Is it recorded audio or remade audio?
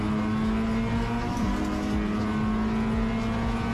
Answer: recorded